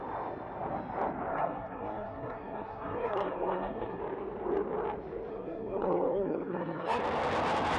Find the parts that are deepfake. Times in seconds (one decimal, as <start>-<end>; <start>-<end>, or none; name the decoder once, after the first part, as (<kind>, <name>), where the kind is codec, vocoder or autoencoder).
1.3-4.0 (codec, SNAC); 5.3-7.0